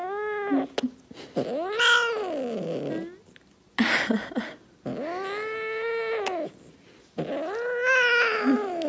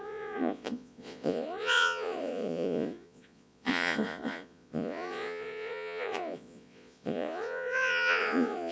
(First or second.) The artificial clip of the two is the second